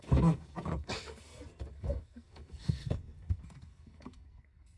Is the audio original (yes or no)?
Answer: no